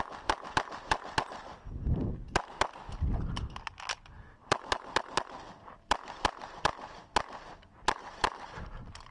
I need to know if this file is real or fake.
real